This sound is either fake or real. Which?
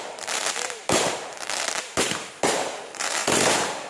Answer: fake